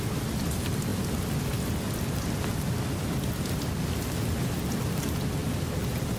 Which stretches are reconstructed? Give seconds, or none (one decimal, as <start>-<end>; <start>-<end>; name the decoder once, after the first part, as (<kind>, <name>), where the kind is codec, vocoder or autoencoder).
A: none